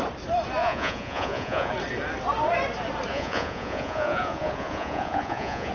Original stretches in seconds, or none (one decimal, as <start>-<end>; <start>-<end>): 0.0-0.6; 1.7-3.1